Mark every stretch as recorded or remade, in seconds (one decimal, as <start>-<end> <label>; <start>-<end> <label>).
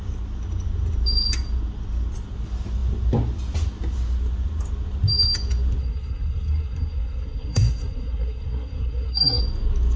0.0-5.8 recorded; 5.8-9.4 remade; 9.4-10.0 recorded